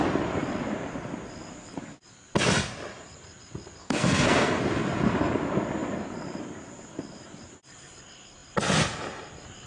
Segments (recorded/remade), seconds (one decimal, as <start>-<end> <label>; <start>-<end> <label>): 0.0-3.8 recorded; 3.8-4.6 remade; 4.6-9.7 recorded